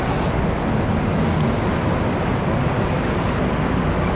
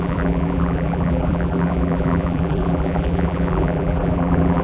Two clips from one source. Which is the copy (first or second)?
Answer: second